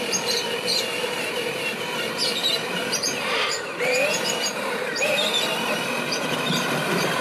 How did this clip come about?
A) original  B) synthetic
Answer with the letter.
B